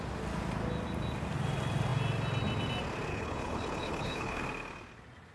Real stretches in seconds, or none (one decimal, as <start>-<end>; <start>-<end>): 0.0-3.1; 4.4-5.3

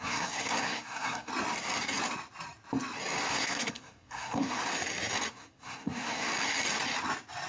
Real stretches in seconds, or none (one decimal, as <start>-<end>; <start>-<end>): 1.3-3.3; 4.6-5.3; 6.3-7.5

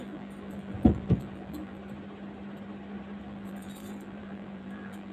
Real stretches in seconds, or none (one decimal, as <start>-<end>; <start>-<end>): 1.8-3.2

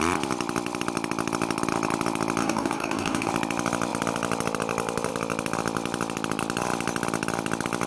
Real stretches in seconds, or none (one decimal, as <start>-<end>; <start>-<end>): 0.0-2.4; 3.3-7.9

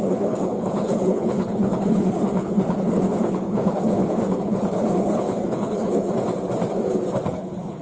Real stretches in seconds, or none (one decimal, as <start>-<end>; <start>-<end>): 6.1-7.2